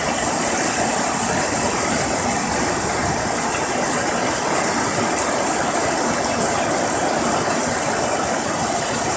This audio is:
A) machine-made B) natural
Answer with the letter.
B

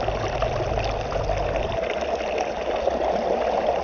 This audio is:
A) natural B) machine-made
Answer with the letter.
A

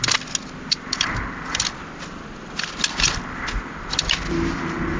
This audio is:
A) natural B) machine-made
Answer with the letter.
A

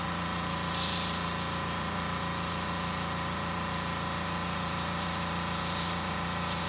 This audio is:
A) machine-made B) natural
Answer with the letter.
A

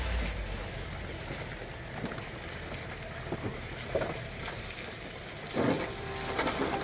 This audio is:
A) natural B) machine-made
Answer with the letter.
A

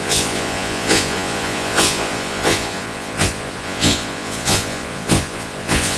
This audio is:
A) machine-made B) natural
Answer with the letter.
A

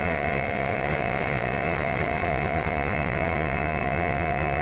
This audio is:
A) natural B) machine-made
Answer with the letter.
B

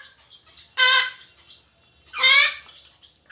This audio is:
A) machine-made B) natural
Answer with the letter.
B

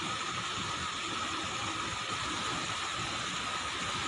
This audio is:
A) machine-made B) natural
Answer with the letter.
B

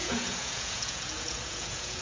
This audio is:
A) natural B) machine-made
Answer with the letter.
B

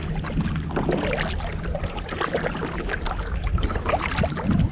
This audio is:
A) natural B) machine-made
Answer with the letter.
A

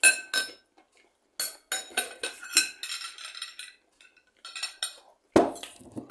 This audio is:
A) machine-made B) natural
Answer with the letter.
B